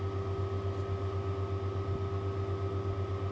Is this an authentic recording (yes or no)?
yes